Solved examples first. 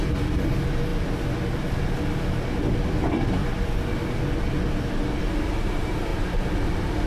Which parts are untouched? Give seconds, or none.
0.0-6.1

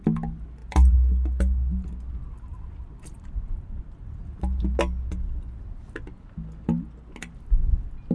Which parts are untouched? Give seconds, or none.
0.0-8.1

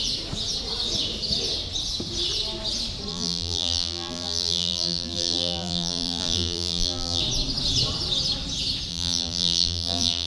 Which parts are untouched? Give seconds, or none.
0.0-3.1; 7.2-8.9

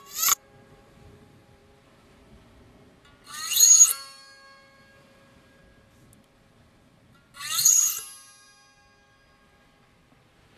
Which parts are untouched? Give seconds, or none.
1.6-3.6; 5.6-10.6